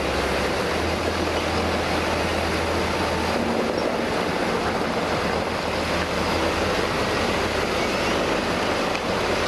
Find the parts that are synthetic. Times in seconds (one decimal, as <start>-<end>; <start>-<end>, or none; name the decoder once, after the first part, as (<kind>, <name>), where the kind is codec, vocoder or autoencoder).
none